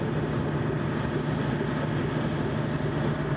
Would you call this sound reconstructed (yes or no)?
no